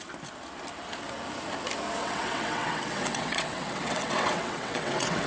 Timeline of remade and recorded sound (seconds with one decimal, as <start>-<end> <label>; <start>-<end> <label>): 0.0-2.0 recorded; 2.0-5.3 remade